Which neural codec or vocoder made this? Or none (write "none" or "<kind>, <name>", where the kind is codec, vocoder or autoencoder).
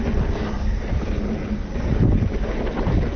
none